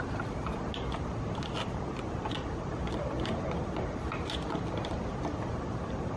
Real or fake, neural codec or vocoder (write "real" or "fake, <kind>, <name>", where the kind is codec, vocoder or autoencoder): real